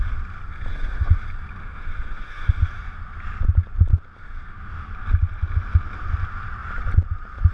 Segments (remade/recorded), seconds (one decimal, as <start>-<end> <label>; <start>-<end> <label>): 0.0-0.7 recorded; 0.7-1.2 remade; 1.2-1.6 recorded; 1.6-2.5 remade; 2.5-7.5 recorded